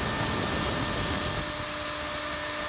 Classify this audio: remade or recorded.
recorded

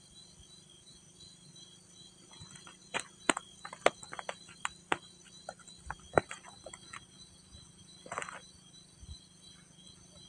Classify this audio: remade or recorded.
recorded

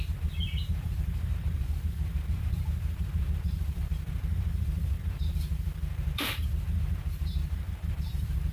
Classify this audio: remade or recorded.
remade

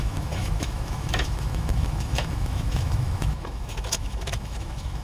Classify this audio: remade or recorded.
remade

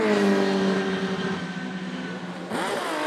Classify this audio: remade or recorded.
recorded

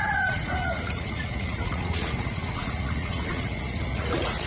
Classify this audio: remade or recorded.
remade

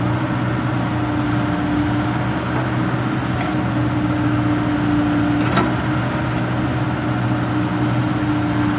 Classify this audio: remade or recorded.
recorded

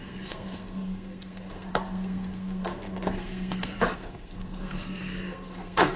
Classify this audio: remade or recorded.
remade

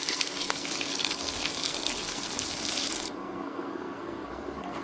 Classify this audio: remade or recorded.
remade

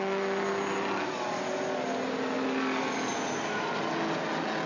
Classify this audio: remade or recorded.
recorded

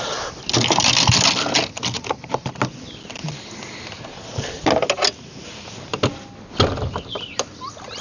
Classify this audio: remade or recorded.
recorded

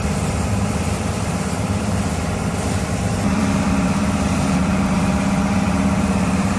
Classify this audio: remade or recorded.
remade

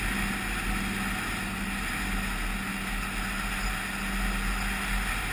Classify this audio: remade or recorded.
recorded